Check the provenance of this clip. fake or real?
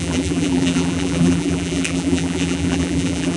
fake